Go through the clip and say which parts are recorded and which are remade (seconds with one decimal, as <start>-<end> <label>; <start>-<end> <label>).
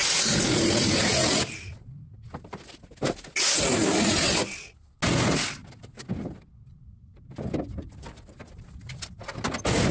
0.0-9.9 recorded